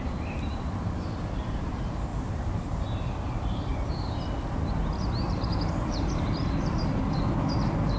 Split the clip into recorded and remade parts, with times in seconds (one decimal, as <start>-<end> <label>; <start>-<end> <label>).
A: 0.0-3.7 remade; 3.7-5.2 recorded; 5.2-8.0 remade